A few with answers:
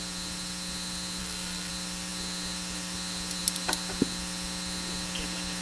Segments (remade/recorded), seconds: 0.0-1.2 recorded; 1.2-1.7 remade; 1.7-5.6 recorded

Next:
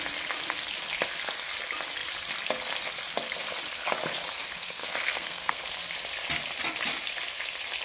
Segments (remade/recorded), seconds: 0.0-4.6 recorded; 4.6-5.6 remade; 5.6-7.8 recorded

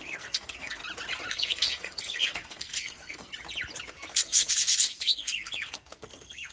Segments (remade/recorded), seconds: 0.0-0.8 remade; 0.8-1.3 recorded; 1.3-3.3 remade; 3.3-3.9 recorded; 3.9-6.5 remade

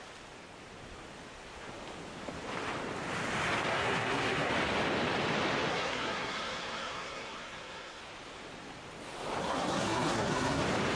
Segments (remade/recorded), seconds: 0.0-3.7 recorded; 3.7-4.5 remade; 4.5-5.7 recorded; 5.7-8.0 remade; 8.0-9.4 recorded; 9.4-10.6 remade; 10.6-11.0 recorded

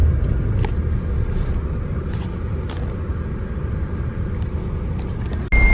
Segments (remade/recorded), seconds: 0.0-5.7 recorded

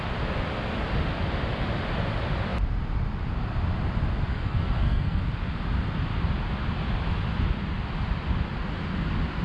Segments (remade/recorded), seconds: 0.0-4.3 recorded; 4.3-5.2 remade; 5.2-9.4 recorded

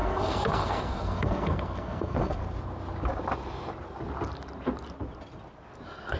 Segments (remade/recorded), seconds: 0.0-2.4 remade; 2.4-6.2 recorded

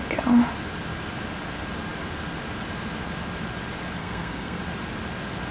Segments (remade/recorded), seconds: 0.0-4.0 recorded; 4.0-4.6 remade; 4.6-5.5 recorded